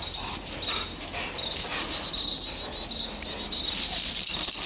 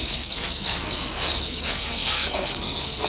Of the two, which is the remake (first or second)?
second